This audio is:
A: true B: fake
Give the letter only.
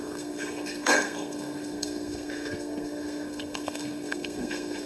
B